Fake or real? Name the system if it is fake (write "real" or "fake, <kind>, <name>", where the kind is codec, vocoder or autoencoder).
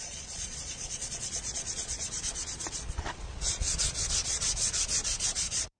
fake, vocoder, Vocos